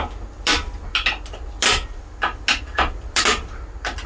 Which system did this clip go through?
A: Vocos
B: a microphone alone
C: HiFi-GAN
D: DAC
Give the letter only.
B